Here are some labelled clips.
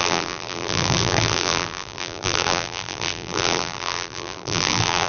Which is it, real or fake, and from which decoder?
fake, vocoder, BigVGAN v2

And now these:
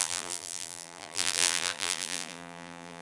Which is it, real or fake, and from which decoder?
fake, vocoder, BigVGAN v2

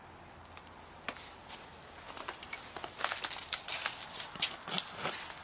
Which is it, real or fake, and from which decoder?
real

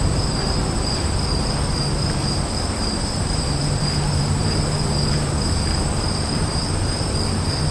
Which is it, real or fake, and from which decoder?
fake, vocoder, BigVGAN v2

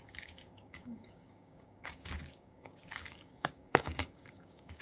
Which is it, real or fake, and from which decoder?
fake, codec, DAC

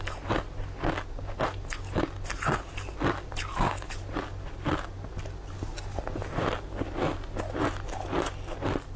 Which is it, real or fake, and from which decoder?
real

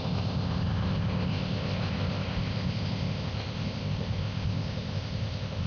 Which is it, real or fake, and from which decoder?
fake, codec, ZipCodec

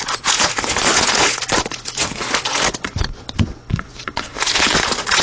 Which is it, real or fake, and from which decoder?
fake, vocoder, Vocos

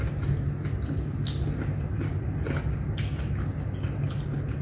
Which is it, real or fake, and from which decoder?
real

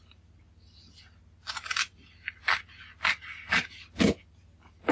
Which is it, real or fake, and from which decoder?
real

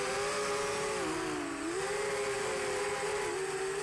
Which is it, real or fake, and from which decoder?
real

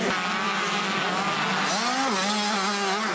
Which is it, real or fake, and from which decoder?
real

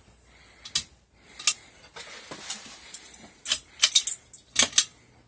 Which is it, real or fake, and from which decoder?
real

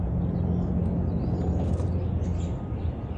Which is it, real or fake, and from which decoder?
real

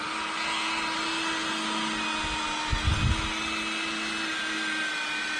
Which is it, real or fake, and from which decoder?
real